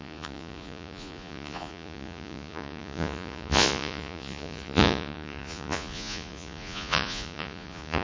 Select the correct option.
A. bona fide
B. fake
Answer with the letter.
B